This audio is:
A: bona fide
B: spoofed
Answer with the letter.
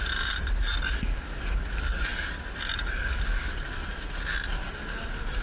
A